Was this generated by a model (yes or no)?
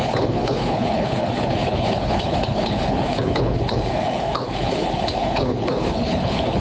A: yes